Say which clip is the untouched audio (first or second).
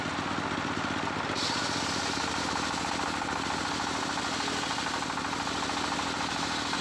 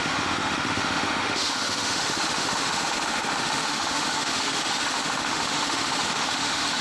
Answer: first